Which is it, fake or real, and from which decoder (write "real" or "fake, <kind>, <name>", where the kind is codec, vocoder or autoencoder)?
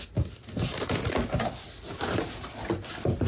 real